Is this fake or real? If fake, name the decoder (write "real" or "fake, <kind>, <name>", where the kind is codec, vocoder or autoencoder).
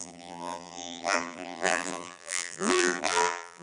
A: fake, vocoder, BigVGAN v2